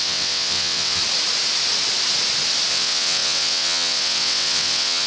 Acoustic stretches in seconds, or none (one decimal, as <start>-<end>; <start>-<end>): 1.0-2.7